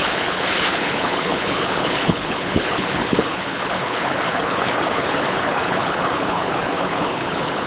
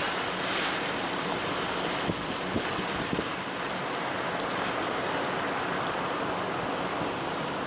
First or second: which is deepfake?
first